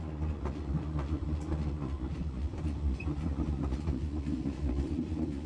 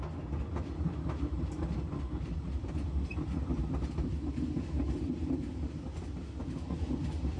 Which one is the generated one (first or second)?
first